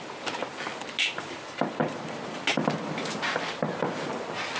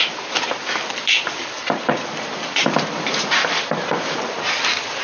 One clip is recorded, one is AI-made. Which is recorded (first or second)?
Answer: first